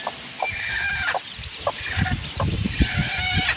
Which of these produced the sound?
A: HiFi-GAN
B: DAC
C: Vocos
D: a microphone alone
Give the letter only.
D